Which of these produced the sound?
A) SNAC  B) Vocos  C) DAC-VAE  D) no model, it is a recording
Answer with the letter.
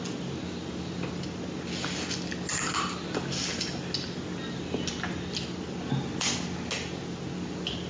D